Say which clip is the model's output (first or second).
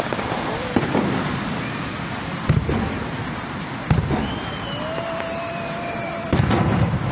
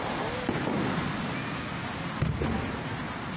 first